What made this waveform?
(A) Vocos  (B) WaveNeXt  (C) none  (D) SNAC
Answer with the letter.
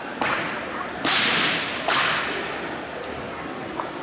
C